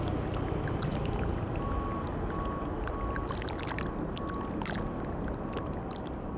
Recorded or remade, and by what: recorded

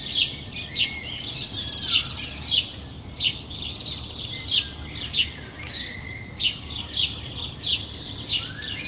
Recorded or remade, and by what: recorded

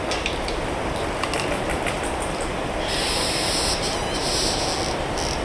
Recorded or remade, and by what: recorded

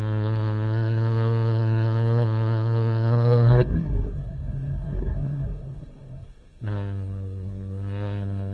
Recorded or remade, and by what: remade, codec, SNAC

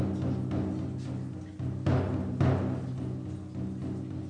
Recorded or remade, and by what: recorded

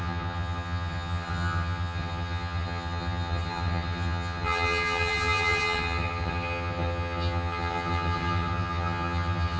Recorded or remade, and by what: remade, vocoder, HiFi-GAN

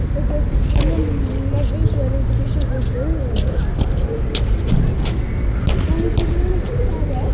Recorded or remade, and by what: recorded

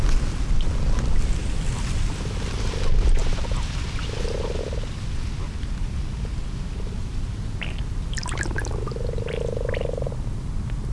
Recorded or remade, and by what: recorded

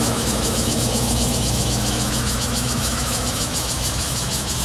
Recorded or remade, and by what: remade, autoencoder, DAC-VAE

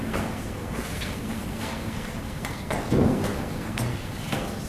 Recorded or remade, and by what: remade, codec, SNAC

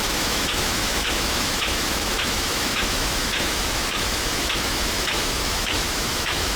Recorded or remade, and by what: remade, autoencoder, DAC-VAE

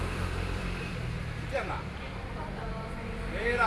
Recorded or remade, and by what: remade, vocoder, BigVGAN v2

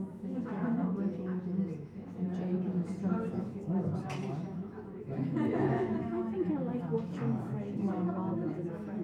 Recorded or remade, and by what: remade, autoencoder, DAC-VAE